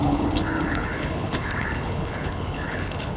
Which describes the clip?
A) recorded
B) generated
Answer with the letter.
B